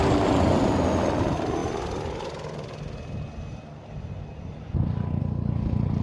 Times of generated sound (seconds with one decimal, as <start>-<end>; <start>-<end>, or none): none